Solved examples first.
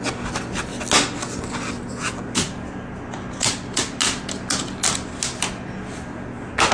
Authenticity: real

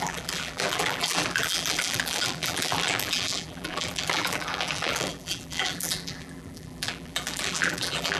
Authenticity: fake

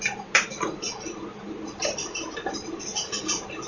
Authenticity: real